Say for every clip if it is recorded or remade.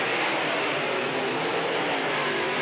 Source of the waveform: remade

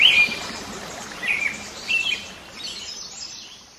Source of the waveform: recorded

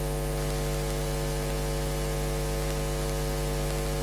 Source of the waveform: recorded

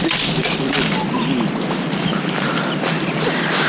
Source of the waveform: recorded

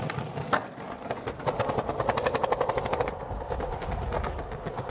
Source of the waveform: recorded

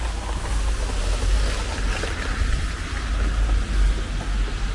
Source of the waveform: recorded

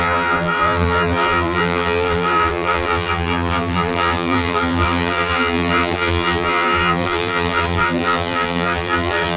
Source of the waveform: remade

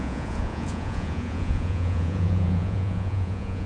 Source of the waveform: remade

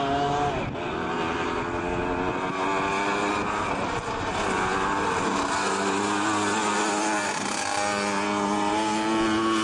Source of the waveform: recorded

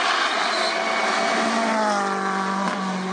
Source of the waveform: recorded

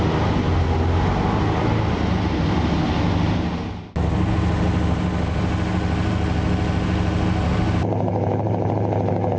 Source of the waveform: recorded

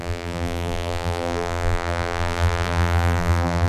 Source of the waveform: remade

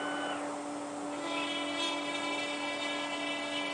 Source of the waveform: recorded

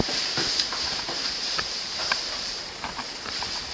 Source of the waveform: remade